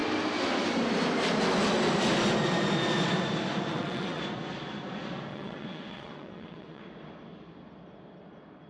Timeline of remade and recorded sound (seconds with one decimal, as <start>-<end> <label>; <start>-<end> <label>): 0.0-3.7 recorded; 3.7-4.2 remade; 4.2-5.3 recorded; 5.3-6.8 remade; 6.8-8.7 recorded